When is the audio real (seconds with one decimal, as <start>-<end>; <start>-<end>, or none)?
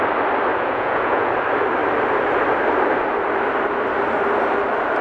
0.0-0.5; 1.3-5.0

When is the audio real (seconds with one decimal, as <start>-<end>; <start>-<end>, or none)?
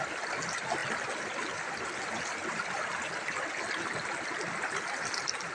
0.0-5.5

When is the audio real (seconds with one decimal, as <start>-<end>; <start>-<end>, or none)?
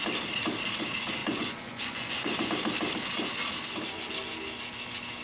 0.0-1.2; 2.5-5.2